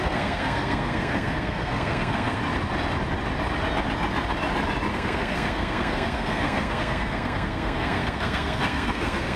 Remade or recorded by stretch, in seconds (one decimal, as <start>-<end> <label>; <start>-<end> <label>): 0.0-2.4 remade; 2.4-4.9 recorded; 4.9-9.4 remade